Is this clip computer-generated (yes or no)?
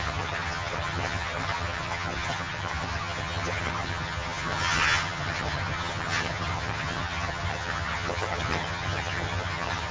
yes